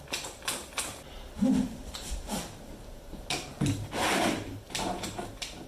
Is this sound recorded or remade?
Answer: recorded